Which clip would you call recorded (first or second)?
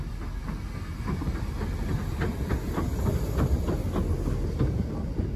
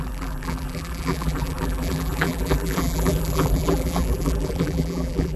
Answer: first